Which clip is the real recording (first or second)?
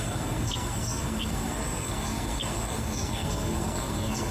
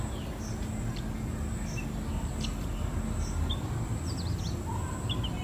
second